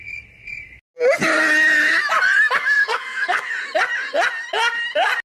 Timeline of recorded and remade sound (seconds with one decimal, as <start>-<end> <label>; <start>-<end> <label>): 0.0-2.6 recorded; 2.6-3.5 remade; 3.5-5.2 recorded